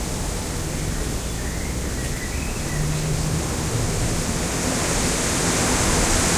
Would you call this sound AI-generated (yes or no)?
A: no